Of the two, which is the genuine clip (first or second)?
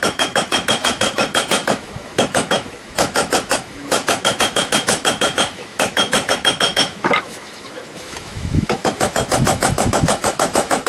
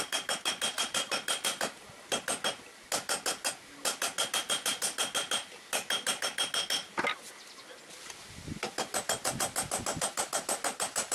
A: second